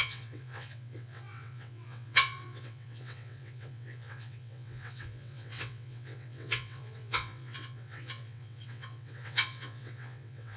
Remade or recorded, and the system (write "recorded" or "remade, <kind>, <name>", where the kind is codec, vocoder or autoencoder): remade, vocoder, WaveNeXt